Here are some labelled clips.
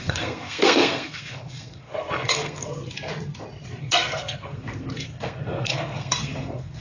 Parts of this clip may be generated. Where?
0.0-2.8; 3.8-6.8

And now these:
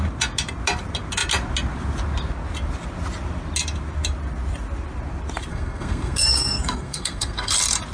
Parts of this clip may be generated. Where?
5.5-7.5